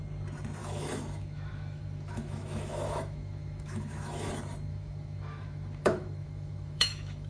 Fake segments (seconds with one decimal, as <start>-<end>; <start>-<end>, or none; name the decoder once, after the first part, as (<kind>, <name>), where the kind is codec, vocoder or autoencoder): 0.6-4.3 (autoencoder, DAC-VAE); 4.7-7.3